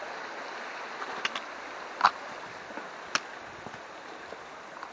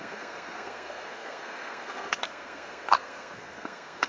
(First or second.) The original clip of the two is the first